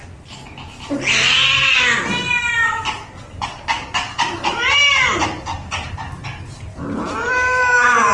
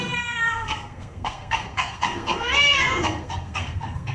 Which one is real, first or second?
first